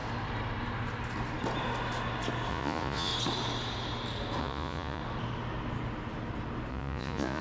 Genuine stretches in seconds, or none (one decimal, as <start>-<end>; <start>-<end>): 0.0-2.5; 3.1-4.4; 5.0-6.7